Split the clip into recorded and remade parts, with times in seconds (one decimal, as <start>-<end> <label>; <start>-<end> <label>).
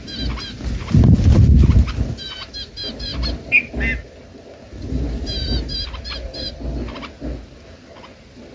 0.0-8.5 recorded